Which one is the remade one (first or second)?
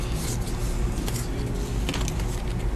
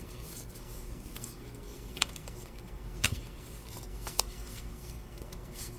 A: second